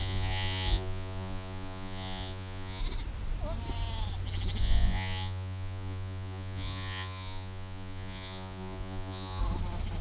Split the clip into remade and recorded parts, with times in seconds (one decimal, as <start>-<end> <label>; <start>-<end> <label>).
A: 0.0-2.8 remade; 2.8-4.6 recorded; 4.6-9.4 remade; 9.4-10.0 recorded